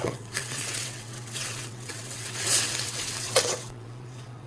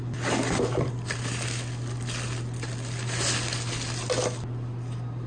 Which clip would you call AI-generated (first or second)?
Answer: first